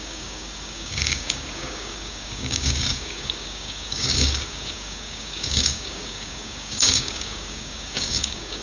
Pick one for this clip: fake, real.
fake